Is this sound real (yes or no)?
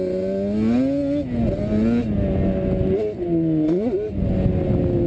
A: yes